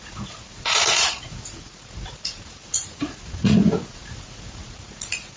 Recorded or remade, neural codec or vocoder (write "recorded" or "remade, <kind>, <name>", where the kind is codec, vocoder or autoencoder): remade, vocoder, Vocos